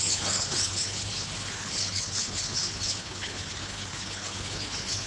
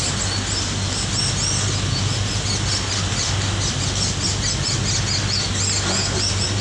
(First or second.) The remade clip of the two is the first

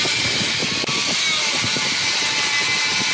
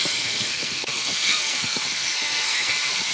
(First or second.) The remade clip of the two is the second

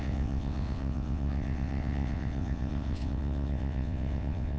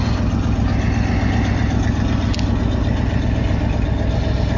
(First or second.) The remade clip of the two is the first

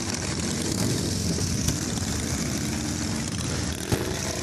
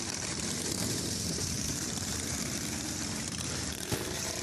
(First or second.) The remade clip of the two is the second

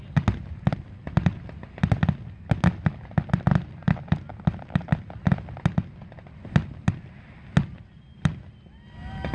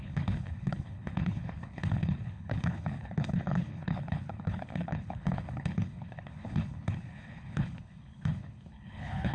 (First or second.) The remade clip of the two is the second